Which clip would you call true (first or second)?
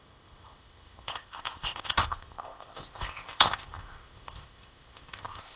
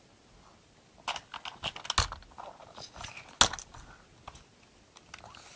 second